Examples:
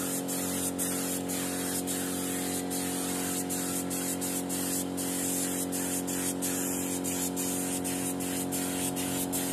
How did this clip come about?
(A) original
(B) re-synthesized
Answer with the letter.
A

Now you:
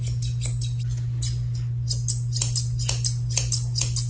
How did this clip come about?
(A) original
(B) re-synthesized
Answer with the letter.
A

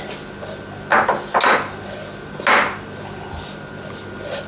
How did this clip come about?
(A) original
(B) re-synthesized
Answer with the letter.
A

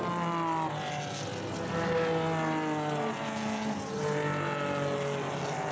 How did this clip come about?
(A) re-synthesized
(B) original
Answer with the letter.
B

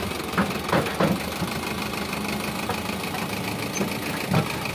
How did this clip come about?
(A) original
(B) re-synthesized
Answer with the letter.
A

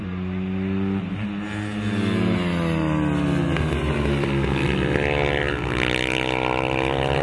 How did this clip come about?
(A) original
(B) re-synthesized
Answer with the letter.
A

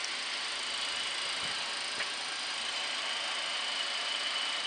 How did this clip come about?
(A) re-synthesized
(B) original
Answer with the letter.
B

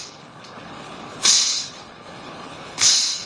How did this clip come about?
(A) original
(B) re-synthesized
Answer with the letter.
B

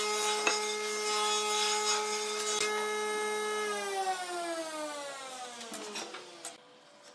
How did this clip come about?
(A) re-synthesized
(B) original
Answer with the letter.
B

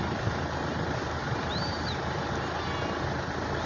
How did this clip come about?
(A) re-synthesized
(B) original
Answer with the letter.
B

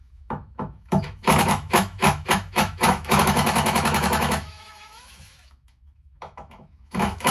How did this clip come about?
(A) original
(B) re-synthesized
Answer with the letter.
B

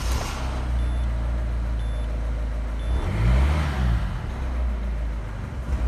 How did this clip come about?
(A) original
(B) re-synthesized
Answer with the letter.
A